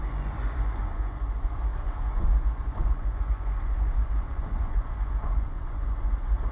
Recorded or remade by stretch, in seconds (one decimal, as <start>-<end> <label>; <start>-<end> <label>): 0.0-6.5 remade